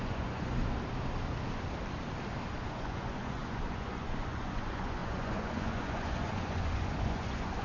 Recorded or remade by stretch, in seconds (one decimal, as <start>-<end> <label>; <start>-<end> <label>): 0.0-0.6 remade; 0.6-2.7 recorded; 2.7-7.6 remade